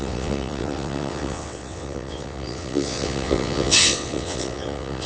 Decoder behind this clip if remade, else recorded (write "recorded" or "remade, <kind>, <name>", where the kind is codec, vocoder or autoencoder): remade, vocoder, WaveNeXt